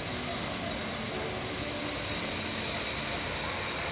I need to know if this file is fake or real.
real